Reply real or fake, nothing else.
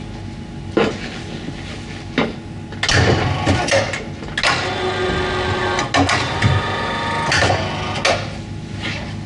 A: real